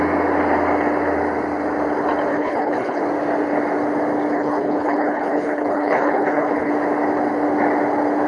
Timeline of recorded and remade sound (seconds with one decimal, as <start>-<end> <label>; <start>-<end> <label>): 0.0-2.3 recorded; 2.3-3.0 remade; 3.0-4.3 recorded; 4.3-6.7 remade; 6.7-8.3 recorded